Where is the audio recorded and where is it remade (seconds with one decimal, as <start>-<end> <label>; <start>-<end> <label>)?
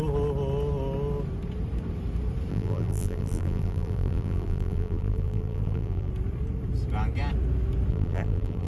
0.0-2.5 recorded; 2.5-6.1 remade; 6.1-7.9 recorded; 7.9-8.7 remade